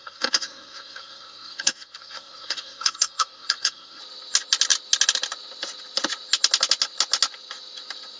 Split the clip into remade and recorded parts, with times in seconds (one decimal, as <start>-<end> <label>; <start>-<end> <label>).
0.0-4.0 remade; 4.0-8.2 recorded